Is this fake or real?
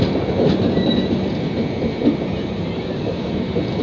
real